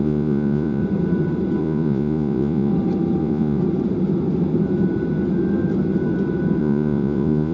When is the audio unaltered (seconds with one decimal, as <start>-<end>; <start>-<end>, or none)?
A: 0.8-1.6; 2.7-3.2; 3.6-6.6